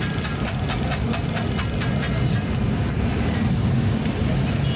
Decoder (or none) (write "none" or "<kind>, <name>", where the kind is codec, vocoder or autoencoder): none